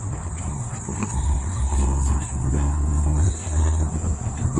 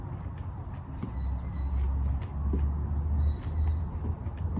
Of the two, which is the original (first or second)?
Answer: second